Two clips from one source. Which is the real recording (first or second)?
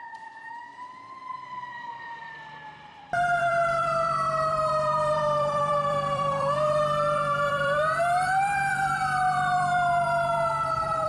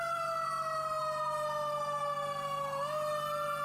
second